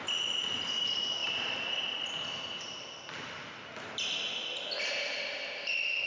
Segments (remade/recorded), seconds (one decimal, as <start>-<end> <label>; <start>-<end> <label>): 0.0-6.1 recorded